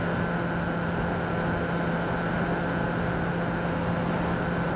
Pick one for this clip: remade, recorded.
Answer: recorded